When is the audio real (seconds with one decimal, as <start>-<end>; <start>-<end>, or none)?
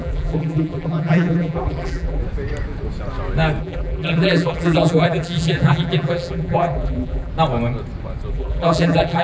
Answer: 2.2-3.6; 7.3-8.3